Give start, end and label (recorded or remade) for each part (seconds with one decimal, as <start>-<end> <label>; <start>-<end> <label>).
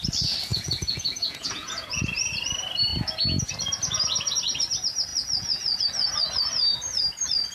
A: 0.0-0.5 recorded; 0.5-2.0 remade; 2.0-5.1 recorded; 5.1-5.8 remade; 5.8-7.5 recorded